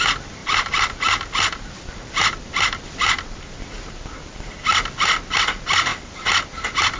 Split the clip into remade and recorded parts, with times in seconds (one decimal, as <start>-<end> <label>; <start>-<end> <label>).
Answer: 0.0-7.0 recorded